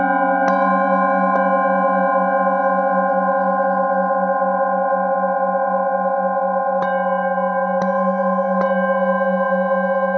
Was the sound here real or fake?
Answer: real